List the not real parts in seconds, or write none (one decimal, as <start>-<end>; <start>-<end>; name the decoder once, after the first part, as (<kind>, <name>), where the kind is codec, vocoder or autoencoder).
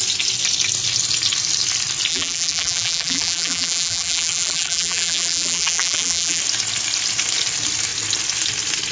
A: 2.1-6.4 (vocoder, BigVGAN v2)